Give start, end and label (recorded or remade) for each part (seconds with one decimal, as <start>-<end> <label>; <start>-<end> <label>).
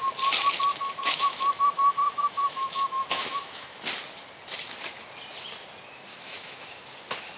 0.0-0.7 recorded; 0.7-3.8 remade; 3.8-6.1 recorded; 6.1-6.9 remade; 6.9-7.4 recorded